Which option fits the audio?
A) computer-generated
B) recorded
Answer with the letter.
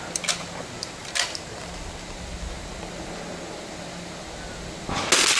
B